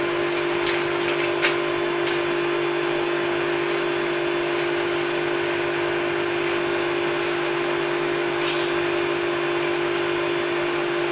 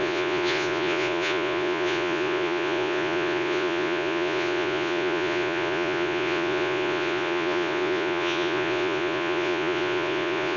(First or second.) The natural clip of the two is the first